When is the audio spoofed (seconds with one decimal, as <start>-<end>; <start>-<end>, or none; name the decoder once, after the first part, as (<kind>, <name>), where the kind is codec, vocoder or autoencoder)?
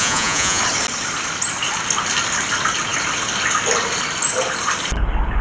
0.0-0.6 (vocoder, Vocos)